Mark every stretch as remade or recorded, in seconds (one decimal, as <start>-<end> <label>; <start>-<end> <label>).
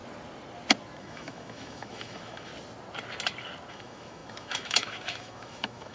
0.0-1.0 recorded; 1.0-2.5 remade; 2.5-3.7 recorded; 3.7-5.9 remade